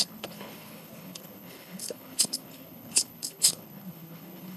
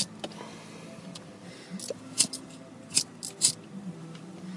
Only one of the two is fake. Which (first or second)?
first